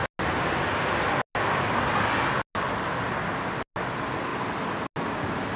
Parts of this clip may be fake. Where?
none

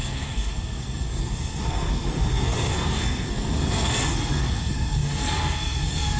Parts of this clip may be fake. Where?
0.0-6.2

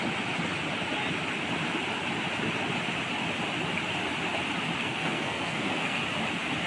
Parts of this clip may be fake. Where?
4.8-6.0

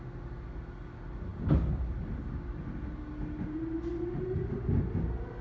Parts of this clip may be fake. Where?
none

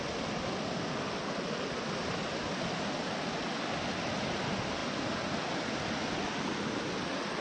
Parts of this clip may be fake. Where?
none

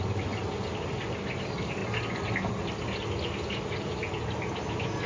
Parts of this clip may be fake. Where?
none

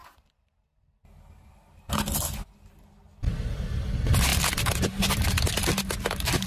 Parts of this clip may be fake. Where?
none